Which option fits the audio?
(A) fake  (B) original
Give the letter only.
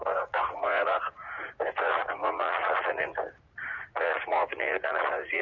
A